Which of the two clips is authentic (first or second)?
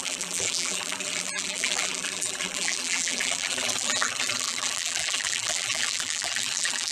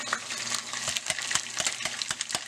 second